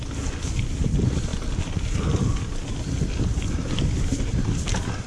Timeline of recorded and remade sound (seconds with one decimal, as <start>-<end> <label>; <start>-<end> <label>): 0.0-5.1 recorded